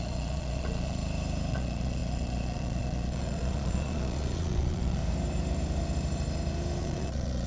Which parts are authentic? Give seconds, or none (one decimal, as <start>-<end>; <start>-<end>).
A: 1.0-1.5; 5.0-6.8